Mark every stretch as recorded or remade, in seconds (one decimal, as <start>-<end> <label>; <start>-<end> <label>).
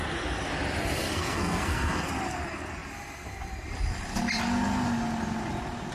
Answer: 0.0-1.0 recorded; 1.0-2.1 remade; 2.1-5.9 recorded